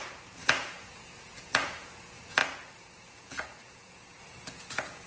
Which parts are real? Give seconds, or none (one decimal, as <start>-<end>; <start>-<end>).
none